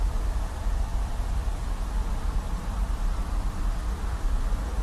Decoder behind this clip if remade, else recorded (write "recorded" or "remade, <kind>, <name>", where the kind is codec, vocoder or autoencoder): remade, vocoder, BigVGAN v2